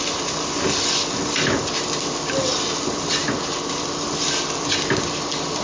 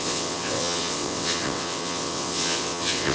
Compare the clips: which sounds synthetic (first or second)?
second